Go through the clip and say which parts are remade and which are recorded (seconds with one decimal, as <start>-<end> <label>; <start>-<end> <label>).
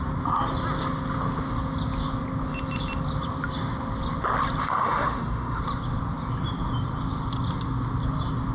0.0-4.6 recorded; 4.6-5.6 remade; 5.6-8.5 recorded